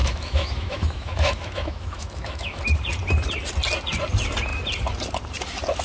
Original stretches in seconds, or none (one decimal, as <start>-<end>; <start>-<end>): 2.6-5.8